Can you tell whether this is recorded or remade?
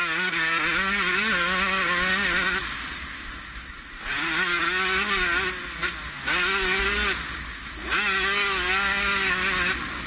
recorded